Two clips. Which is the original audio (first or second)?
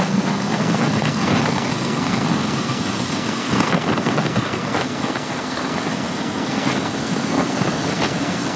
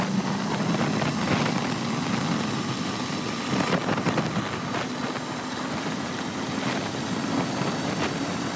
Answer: second